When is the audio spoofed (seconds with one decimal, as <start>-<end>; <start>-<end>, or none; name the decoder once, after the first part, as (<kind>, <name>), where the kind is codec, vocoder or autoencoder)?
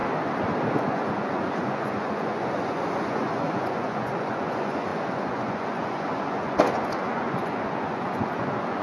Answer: 0.8-8.8 (vocoder, Vocos)